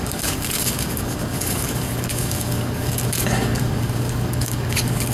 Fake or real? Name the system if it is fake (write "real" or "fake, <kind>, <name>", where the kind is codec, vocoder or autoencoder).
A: fake, codec, DAC